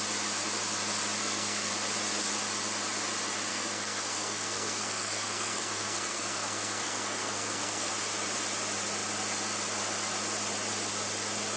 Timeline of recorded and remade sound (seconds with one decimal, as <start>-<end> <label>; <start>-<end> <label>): 0.0-1.2 recorded; 1.2-1.7 remade; 1.7-3.5 recorded; 3.5-7.9 remade; 7.9-11.6 recorded